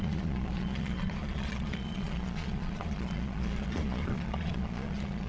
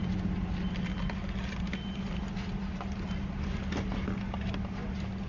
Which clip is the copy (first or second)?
first